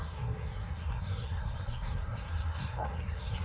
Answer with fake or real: fake